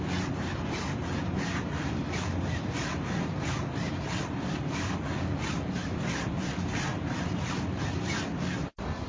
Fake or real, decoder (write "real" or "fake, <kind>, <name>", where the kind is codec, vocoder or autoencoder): fake, vocoder, BigVGAN v2